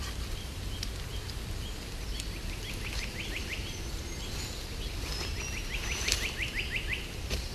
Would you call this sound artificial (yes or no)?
no